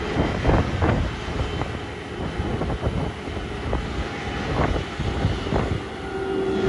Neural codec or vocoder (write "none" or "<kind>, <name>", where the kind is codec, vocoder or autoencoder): none